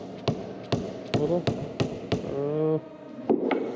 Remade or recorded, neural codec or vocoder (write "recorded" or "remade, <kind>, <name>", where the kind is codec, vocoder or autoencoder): recorded